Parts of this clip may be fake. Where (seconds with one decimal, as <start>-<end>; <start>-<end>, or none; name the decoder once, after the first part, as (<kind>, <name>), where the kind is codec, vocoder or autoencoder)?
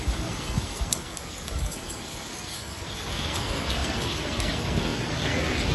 0.0-5.7 (codec, SNAC)